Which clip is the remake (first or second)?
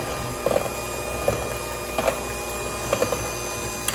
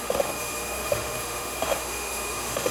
second